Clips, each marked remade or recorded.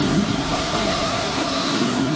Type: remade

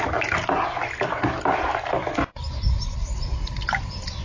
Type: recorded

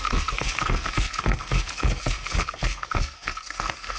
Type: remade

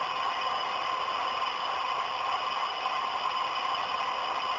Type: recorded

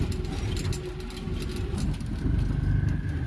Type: recorded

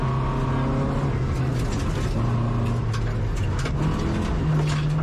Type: recorded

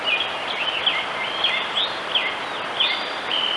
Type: recorded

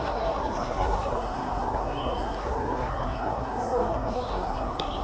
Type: remade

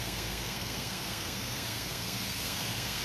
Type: remade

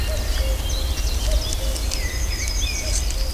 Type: recorded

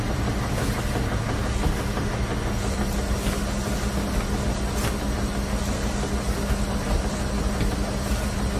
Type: recorded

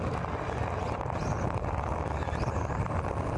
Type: recorded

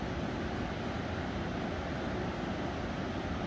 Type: recorded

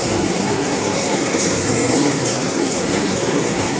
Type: remade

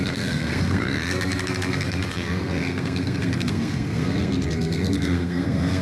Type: remade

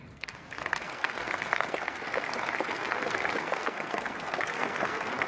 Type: remade